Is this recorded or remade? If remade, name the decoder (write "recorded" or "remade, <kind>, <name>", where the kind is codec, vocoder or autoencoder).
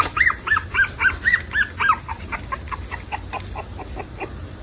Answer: remade, vocoder, BigVGAN v2